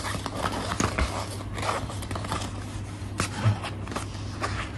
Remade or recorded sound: recorded